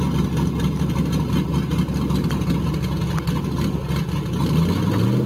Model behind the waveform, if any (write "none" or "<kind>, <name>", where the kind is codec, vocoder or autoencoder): none